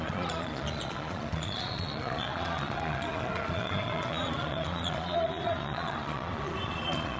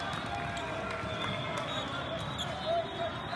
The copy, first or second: first